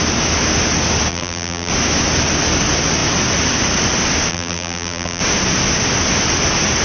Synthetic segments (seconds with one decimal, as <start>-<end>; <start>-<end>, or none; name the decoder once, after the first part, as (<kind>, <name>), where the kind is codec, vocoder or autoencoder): 1.1-1.7 (vocoder, BigVGAN v2); 4.3-5.2